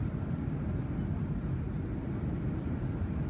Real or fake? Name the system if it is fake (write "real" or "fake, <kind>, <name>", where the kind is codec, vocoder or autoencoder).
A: real